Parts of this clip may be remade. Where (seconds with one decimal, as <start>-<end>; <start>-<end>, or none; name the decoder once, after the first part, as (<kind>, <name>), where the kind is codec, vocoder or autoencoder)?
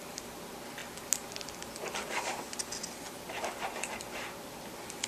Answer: none